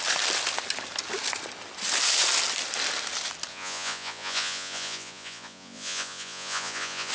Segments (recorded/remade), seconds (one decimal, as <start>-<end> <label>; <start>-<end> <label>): 0.0-3.5 recorded; 3.5-7.1 remade

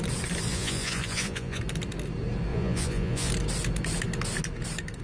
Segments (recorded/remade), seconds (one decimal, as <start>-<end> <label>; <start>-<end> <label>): 0.0-0.5 recorded; 0.5-1.6 remade; 1.6-2.5 recorded; 2.5-3.3 remade; 3.3-5.0 recorded